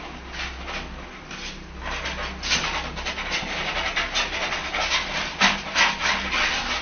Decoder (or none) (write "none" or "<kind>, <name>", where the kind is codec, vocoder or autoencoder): none